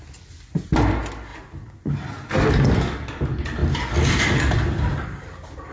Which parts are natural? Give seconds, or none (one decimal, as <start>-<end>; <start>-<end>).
0.0-5.7